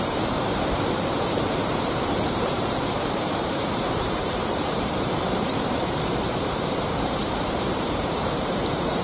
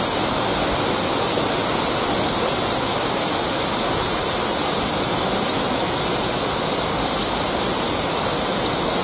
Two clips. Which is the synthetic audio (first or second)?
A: first